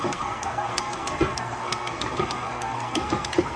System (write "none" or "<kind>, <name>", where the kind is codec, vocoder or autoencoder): codec, SNAC